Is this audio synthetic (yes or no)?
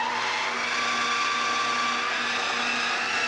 no